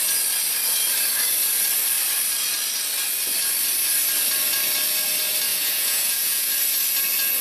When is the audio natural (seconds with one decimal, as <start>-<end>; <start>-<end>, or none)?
0.0-5.5; 6.5-7.4